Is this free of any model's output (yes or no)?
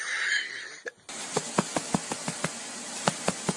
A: yes